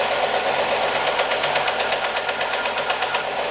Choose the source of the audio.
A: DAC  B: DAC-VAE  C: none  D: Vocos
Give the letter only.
C